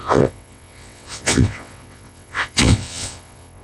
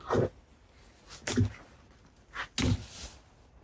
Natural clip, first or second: second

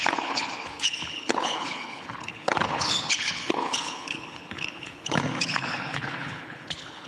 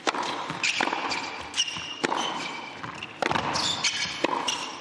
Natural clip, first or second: second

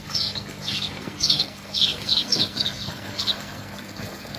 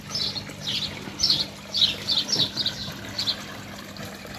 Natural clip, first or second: second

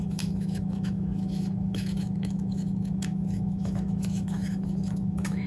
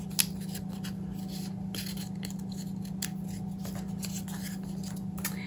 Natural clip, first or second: second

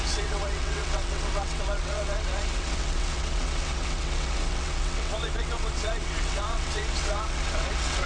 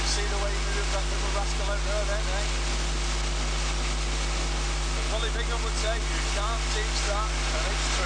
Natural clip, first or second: second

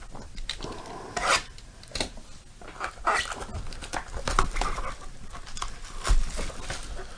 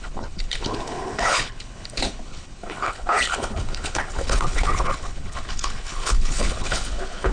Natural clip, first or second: first